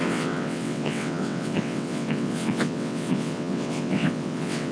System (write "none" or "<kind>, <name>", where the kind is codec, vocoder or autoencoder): vocoder, WaveNeXt